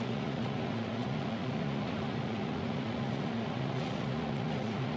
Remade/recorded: remade